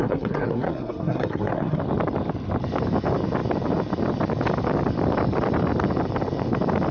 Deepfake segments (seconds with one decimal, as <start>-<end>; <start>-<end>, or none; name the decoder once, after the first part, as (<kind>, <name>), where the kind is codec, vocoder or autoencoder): 0.0-1.8 (codec, SNAC)